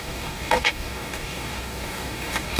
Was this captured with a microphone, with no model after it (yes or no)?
no